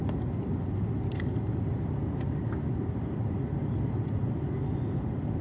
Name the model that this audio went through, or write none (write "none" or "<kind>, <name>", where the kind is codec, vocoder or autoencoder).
none